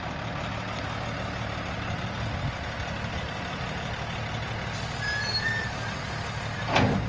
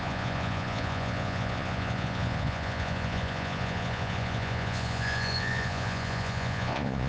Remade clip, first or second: second